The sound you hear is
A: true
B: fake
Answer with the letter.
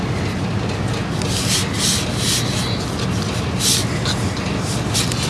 A